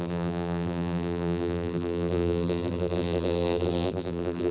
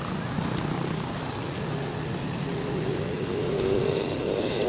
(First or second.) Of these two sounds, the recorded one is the second